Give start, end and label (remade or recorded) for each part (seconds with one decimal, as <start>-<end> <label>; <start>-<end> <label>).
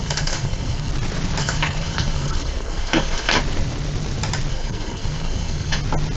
0.0-0.9 remade; 0.9-1.4 recorded; 1.4-3.4 remade; 3.4-4.5 recorded; 4.5-5.8 remade; 5.8-6.2 recorded